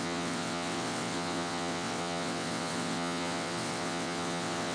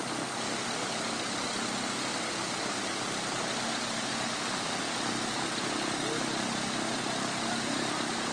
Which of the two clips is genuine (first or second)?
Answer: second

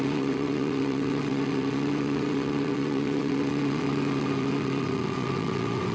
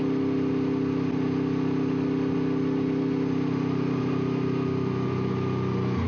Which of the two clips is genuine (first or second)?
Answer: second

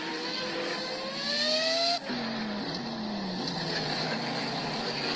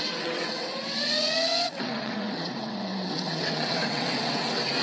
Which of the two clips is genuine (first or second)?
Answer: first